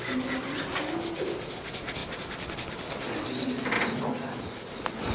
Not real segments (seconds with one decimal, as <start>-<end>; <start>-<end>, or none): none